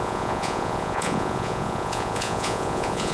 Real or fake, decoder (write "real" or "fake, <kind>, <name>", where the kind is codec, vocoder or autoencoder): fake, vocoder, Vocos